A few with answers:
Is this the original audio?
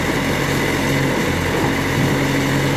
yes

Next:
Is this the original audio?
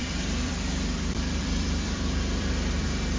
no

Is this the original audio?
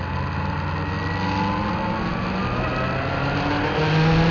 yes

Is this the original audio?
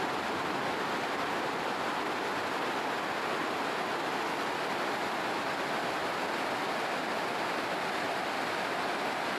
yes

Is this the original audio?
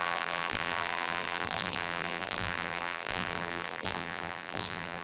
no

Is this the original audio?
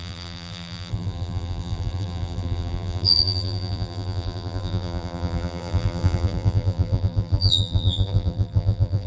no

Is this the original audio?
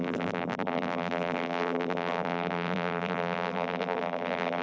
no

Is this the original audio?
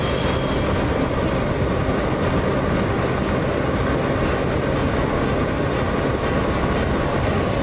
yes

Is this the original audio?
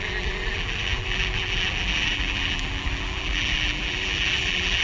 no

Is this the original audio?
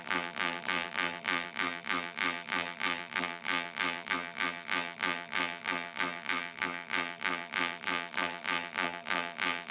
no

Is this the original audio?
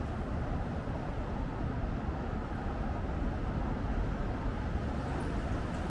yes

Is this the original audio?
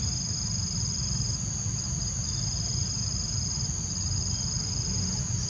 yes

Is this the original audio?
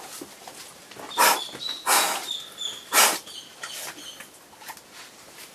yes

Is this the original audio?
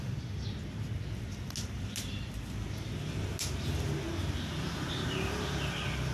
yes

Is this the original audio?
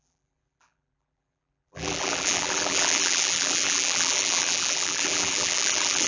no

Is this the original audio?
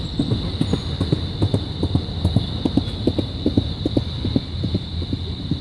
no